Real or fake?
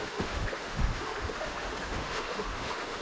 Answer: fake